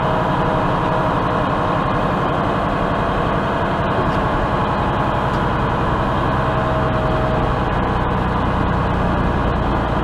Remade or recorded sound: recorded